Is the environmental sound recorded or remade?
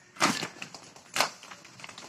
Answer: recorded